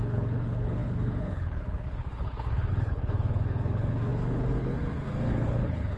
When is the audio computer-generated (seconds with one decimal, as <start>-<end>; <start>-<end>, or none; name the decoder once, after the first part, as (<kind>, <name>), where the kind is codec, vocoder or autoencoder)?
0.0-6.0 (codec, HILCodec)